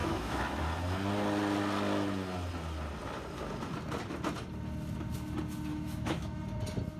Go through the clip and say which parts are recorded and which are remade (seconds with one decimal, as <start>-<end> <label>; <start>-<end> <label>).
0.0-0.6 remade; 0.6-5.7 recorded; 5.7-6.4 remade; 6.4-7.0 recorded